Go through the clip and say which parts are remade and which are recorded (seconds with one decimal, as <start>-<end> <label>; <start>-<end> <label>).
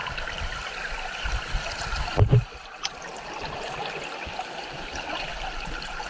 0.0-6.1 recorded